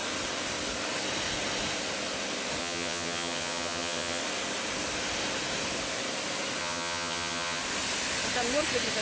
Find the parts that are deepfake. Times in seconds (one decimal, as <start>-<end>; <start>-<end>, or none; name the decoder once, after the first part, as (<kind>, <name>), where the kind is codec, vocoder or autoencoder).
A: 2.6-4.2 (vocoder, HiFi-GAN); 6.6-7.6